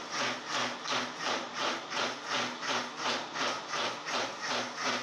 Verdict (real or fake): real